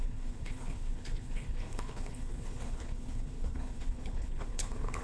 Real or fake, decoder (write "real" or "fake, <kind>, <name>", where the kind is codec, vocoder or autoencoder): fake, codec, HILCodec